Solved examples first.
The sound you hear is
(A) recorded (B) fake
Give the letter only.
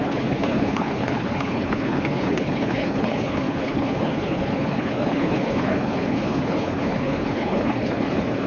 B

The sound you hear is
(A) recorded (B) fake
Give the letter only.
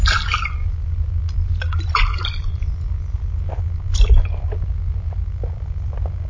A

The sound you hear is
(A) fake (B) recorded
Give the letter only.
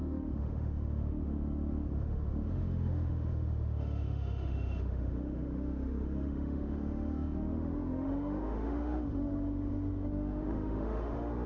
A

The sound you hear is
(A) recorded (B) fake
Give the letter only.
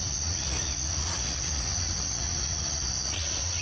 B